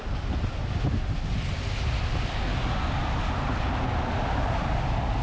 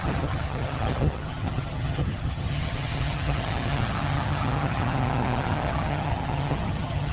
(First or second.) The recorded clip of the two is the first